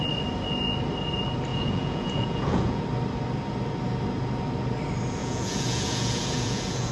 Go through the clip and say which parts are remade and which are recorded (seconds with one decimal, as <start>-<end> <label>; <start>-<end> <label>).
0.0-1.5 recorded; 1.5-2.8 remade; 2.8-5.2 recorded; 5.2-6.9 remade